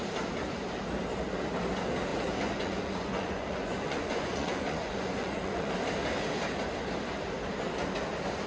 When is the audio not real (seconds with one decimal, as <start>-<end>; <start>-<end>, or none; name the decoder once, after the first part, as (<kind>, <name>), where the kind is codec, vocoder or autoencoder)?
2.1-5.7 (vocoder, Vocos)